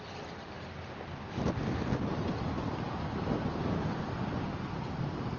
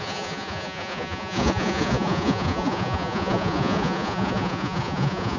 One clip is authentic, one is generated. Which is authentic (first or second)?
first